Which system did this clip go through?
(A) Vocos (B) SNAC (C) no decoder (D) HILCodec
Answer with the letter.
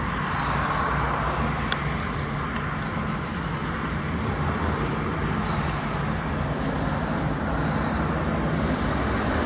C